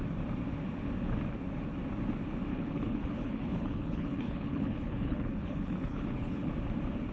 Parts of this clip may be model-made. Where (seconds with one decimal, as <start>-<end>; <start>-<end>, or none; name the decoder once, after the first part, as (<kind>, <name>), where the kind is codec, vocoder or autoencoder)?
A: 2.5-6.5 (codec, HILCodec)